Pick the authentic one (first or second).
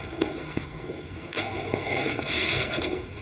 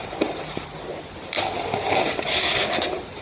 second